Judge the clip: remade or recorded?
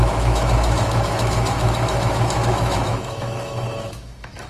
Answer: remade